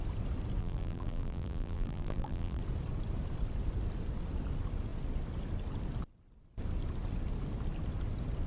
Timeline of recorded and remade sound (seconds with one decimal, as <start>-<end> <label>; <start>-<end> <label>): 0.0-0.6 recorded; 0.6-2.6 remade; 2.6-8.5 recorded